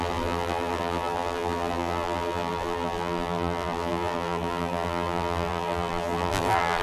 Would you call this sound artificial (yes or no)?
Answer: yes